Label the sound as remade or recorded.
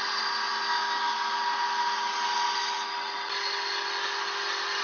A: recorded